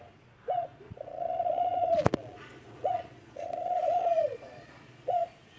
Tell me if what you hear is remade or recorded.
remade